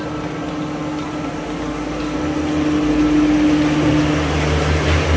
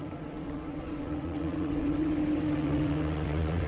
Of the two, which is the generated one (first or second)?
second